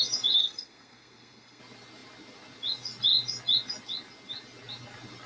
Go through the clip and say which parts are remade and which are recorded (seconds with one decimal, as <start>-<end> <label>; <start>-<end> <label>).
0.0-0.4 recorded; 0.4-1.6 remade; 1.6-5.3 recorded